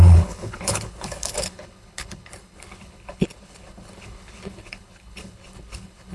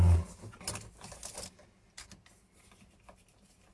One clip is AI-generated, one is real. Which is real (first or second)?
second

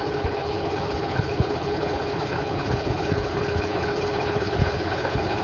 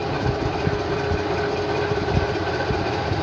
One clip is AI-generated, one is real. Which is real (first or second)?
second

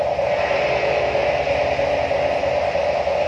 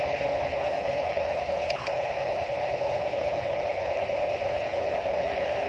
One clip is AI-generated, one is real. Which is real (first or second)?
first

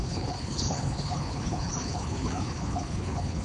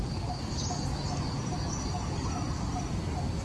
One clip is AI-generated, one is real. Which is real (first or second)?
second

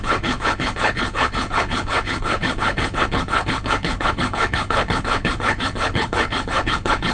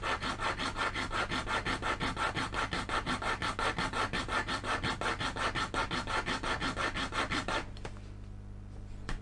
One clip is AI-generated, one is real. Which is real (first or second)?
second